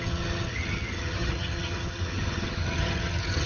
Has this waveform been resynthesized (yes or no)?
yes